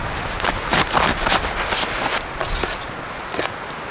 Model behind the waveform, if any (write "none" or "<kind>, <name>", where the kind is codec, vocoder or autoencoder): none